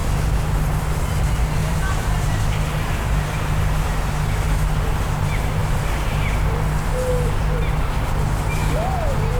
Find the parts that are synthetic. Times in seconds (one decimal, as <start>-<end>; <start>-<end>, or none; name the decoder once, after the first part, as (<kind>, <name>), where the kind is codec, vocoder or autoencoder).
1.6-2.4 (vocoder, BigVGAN v2)